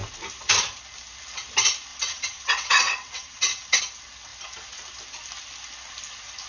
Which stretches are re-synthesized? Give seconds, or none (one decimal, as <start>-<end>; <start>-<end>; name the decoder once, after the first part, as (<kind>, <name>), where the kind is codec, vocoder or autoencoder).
1.9-3.8 (vocoder, WaveNeXt)